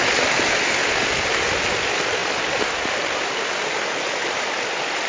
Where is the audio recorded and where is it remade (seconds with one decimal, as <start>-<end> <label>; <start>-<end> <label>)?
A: 0.0-5.1 recorded